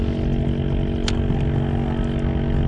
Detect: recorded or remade recorded